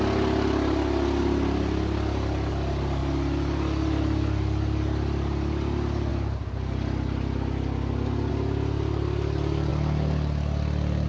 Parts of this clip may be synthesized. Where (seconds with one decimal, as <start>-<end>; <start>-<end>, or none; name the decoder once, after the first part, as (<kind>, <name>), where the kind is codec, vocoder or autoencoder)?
none